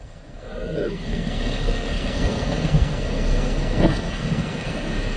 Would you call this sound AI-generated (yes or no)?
yes